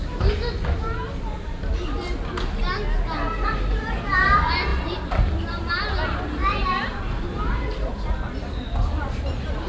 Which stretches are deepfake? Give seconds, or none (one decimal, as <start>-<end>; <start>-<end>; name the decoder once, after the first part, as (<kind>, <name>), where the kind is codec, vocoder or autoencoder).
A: 4.7-5.7 (vocoder, BigVGAN v2); 6.4-7.9